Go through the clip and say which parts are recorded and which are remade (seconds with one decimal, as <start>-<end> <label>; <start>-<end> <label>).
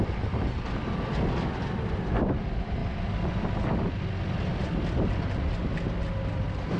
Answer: 0.0-6.8 recorded